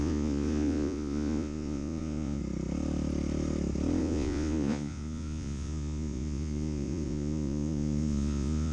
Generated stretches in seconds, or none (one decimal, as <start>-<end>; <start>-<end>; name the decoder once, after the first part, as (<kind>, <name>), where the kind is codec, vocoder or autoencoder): 0.0-2.4 (vocoder, Vocos); 4.0-8.7